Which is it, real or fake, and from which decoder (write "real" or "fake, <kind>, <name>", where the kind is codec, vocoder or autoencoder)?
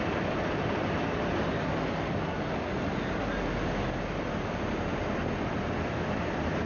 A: real